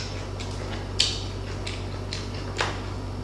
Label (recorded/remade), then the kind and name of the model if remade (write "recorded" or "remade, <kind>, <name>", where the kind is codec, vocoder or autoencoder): recorded